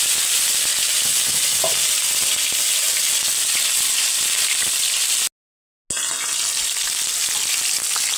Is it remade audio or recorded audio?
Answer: recorded